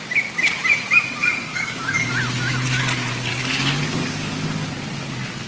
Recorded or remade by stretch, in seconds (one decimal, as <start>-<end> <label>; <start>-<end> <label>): 0.0-1.2 recorded; 1.2-2.1 remade; 2.1-3.3 recorded; 3.3-4.7 remade; 4.7-5.5 recorded